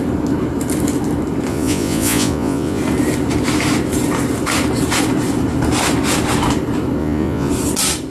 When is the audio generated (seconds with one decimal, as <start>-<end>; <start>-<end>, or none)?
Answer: 1.5-2.8; 7.0-7.5